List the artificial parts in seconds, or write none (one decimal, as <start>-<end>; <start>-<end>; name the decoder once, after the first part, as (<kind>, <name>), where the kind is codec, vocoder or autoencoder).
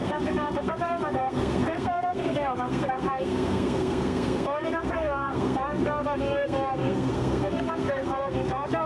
0.0-8.9 (codec, SNAC)